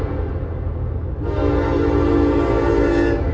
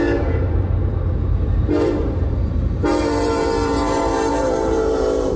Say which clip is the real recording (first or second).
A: first